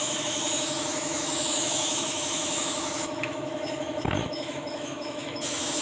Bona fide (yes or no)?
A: no